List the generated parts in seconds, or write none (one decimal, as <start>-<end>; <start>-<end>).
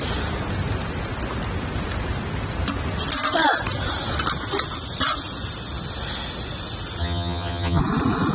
7.0-7.8